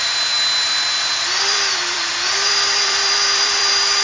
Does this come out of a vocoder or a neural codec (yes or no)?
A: yes